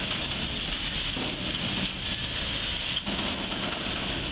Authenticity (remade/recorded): recorded